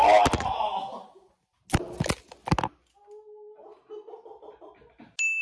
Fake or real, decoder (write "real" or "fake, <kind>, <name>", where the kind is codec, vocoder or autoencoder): real